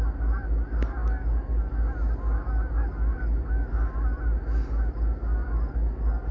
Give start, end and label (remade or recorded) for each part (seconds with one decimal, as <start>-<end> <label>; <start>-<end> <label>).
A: 0.0-6.3 recorded